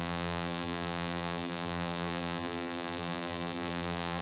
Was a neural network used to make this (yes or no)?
yes